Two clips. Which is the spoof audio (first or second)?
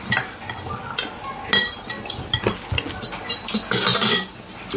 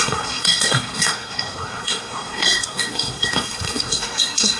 second